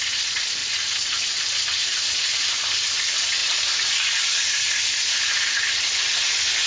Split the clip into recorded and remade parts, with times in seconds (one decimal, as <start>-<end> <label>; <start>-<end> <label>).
0.0-1.8 recorded; 1.8-2.9 remade; 2.9-3.4 recorded; 3.4-5.6 remade; 5.6-6.7 recorded